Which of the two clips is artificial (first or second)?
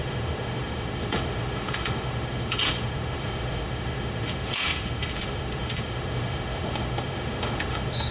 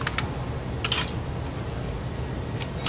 first